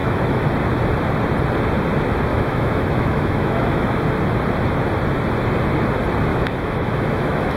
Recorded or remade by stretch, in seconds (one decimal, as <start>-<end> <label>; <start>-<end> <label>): 0.0-0.5 remade; 0.5-2.3 recorded; 2.3-4.0 remade; 4.0-6.3 recorded; 6.3-7.6 remade